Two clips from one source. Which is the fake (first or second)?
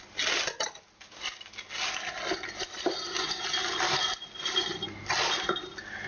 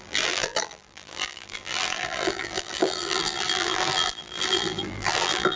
second